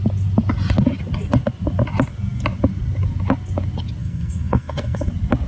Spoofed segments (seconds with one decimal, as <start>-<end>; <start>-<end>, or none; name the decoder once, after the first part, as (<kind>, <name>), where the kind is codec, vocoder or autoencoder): 4.0-5.1 (codec, SNAC)